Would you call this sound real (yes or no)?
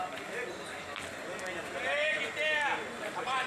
yes